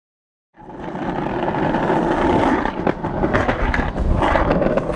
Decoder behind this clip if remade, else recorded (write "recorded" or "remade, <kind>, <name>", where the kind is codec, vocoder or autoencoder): recorded